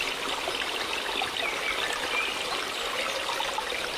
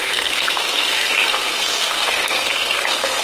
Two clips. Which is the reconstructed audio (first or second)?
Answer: second